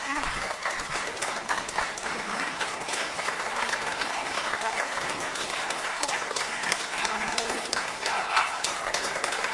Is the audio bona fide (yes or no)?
no